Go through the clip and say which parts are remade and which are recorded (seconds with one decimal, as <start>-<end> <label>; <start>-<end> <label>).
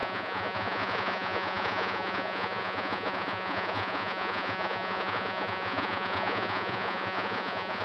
0.0-7.8 remade